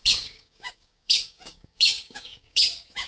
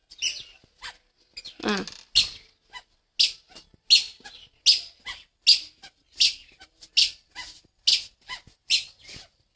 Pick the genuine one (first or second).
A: second